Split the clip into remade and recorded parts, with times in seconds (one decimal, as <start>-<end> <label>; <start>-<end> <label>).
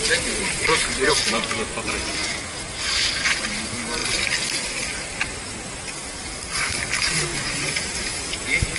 0.0-2.2 recorded; 2.2-2.8 remade; 2.8-7.3 recorded; 7.3-8.8 remade